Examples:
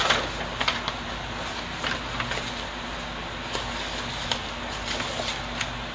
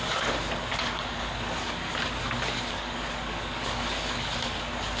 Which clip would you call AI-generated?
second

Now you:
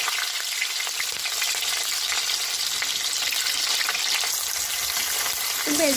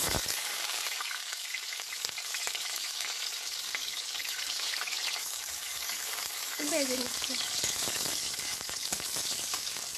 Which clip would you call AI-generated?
second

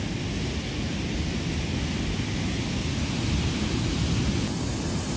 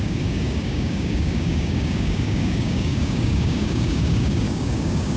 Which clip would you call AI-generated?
second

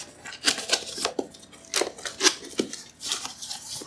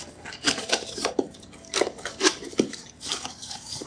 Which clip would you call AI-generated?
second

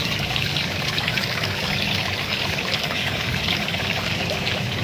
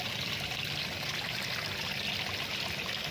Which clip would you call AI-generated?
first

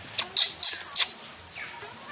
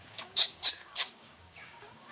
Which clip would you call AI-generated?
second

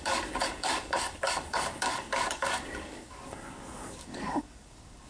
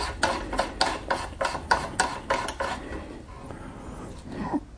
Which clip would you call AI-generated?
first